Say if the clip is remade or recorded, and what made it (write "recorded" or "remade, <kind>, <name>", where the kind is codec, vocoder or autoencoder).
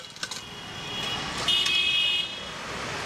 recorded